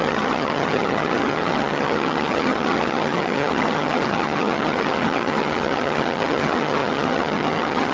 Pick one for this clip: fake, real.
fake